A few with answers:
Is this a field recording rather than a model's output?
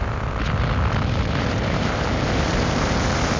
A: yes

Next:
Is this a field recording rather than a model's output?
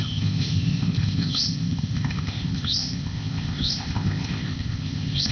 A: no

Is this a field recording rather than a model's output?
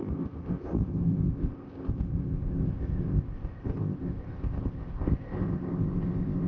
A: no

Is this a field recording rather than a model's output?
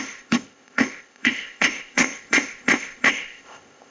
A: no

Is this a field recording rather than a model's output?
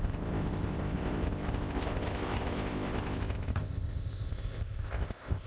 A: no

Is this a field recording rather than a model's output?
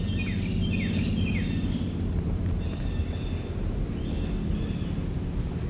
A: yes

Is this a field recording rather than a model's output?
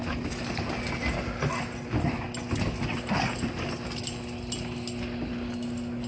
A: yes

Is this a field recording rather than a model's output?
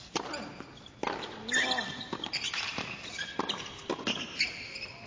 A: yes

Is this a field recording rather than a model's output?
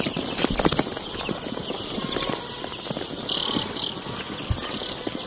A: yes